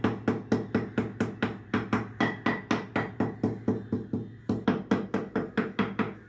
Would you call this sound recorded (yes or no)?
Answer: yes